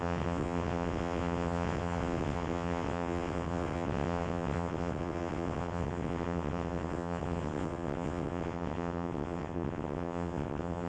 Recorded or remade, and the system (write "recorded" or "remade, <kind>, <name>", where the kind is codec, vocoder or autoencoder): remade, vocoder, WaveNeXt